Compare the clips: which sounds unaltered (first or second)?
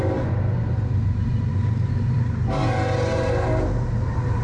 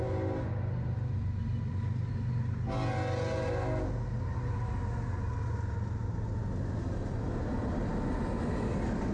second